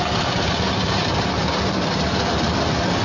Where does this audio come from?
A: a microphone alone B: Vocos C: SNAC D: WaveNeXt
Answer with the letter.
A